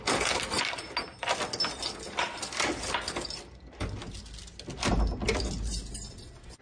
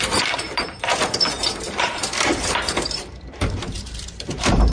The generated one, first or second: second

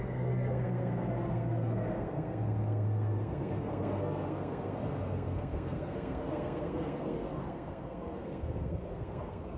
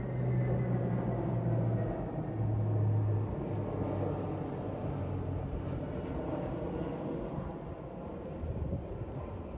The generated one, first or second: first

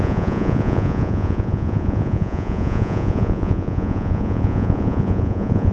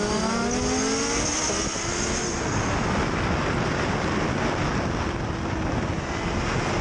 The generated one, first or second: first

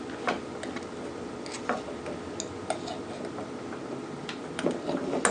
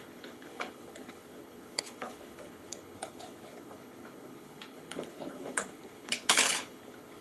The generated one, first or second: second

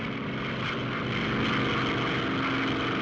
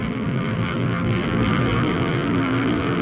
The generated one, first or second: second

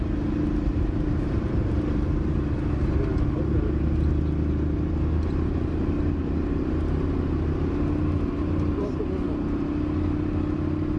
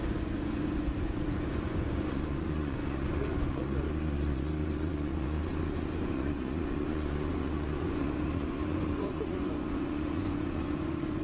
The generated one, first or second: second